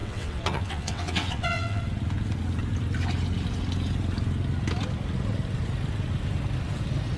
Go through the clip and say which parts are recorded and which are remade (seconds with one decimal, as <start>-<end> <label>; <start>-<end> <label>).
0.0-1.8 remade; 1.8-7.2 recorded